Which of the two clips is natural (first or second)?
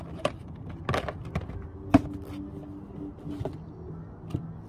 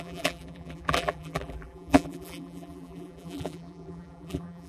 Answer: first